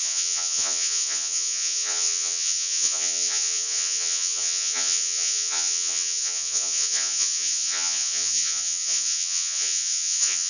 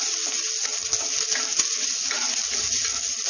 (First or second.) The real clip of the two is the second